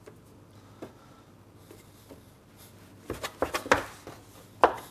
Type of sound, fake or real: real